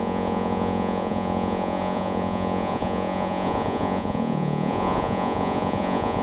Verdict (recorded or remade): remade